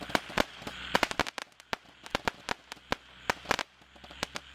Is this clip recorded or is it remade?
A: recorded